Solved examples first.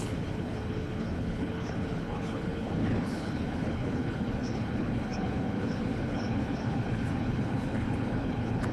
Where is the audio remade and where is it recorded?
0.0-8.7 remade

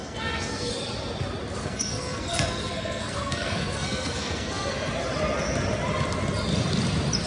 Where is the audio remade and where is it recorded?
0.0-0.7 remade; 0.7-1.6 recorded; 1.6-4.9 remade; 4.9-7.3 recorded

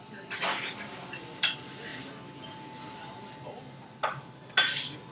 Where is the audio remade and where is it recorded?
0.0-5.1 recorded

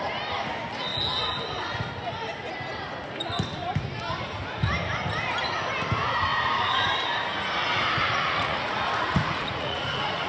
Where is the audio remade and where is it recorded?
0.0-6.3 recorded; 6.3-6.9 remade; 6.9-8.0 recorded; 8.0-10.3 remade